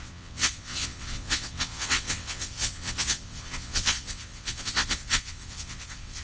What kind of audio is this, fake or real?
fake